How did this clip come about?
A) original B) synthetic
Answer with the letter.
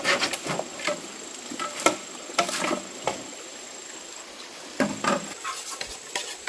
A